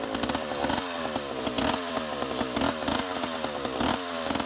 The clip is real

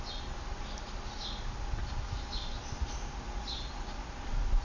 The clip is real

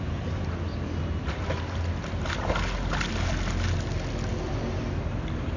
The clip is real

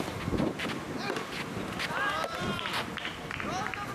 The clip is real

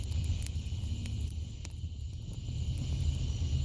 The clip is real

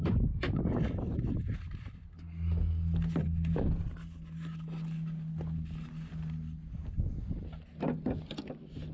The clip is real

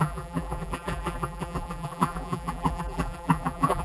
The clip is fake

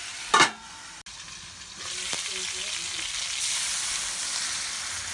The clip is real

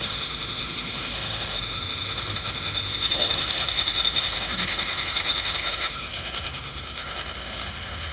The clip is fake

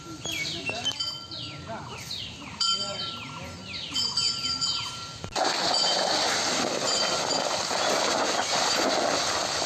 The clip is real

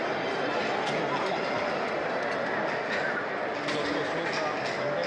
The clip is real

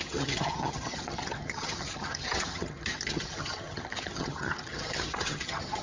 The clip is fake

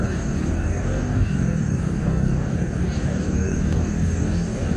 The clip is fake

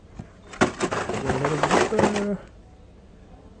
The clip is real